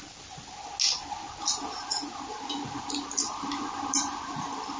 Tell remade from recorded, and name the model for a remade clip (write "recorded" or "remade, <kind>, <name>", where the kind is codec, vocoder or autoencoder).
recorded